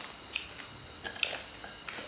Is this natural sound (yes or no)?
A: yes